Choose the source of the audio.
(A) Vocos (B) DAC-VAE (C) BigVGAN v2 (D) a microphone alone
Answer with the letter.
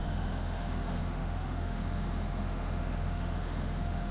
B